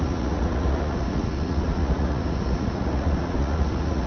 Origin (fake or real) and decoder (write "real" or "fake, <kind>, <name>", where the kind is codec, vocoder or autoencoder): fake, vocoder, Vocos